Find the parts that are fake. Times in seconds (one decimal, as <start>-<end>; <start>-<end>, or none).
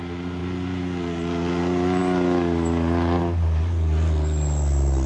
none